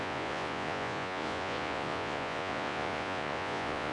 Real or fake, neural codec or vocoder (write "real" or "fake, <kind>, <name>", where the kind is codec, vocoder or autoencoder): fake, vocoder, Vocos